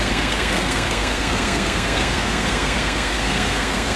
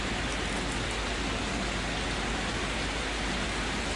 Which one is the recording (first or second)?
second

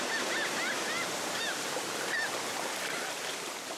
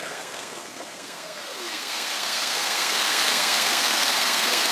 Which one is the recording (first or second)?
first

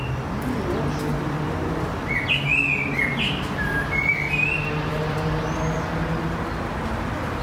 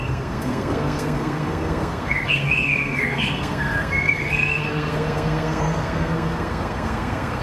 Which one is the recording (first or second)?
first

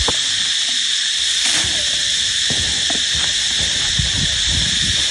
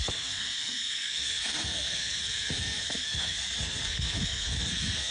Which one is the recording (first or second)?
first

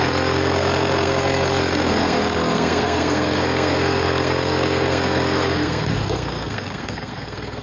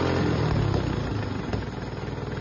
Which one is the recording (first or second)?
second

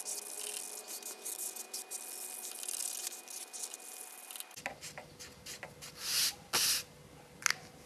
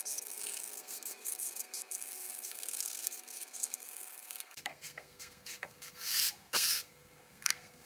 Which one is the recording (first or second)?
first